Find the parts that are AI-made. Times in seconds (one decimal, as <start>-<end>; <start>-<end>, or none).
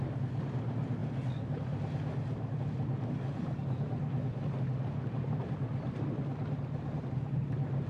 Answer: none